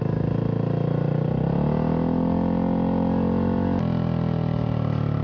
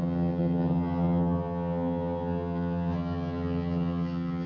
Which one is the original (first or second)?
first